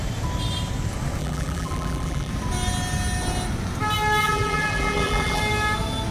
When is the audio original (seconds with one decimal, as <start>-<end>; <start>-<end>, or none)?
0.0-1.2; 2.3-4.2; 5.4-6.1

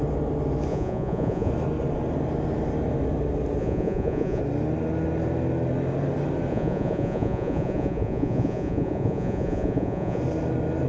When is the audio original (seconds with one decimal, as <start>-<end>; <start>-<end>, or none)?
0.0-0.7; 1.5-3.6; 4.4-6.5; 10.2-10.9

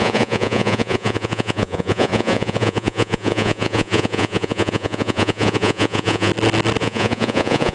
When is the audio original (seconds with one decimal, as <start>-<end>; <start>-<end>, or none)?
6.3-6.8

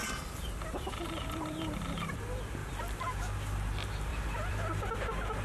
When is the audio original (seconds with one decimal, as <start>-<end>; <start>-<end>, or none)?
2.2-2.6; 3.2-4.1; 4.9-5.4

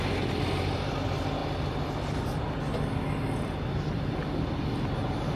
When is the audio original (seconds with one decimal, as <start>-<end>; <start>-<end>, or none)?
0.0-5.4

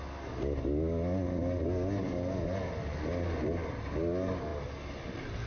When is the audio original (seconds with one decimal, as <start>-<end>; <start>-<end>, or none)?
0.0-5.5